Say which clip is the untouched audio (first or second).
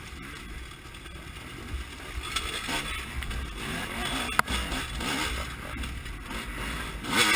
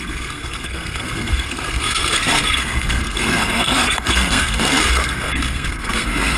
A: first